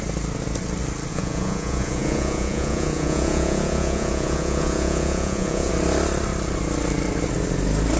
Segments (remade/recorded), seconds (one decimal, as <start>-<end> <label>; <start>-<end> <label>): 0.0-1.1 recorded; 1.1-5.7 remade; 5.7-8.0 recorded